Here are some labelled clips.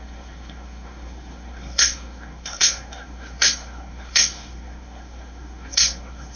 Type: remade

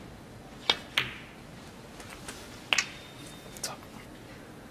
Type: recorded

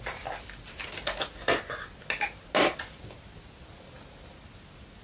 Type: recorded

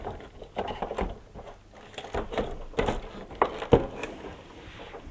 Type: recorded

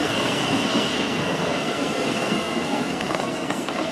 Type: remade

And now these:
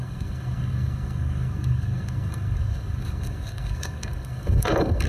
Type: remade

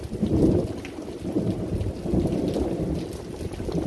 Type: recorded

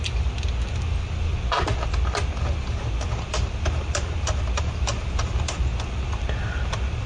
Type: recorded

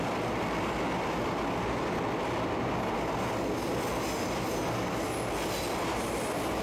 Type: recorded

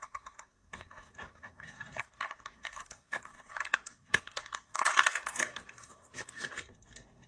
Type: remade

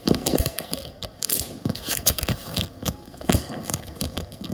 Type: remade